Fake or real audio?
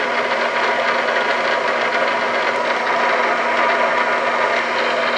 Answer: real